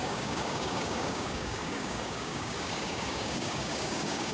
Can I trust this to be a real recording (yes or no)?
no